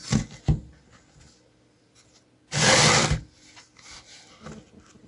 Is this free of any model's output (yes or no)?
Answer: yes